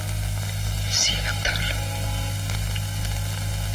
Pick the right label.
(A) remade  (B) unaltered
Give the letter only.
B